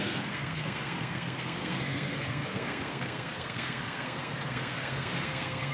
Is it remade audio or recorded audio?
remade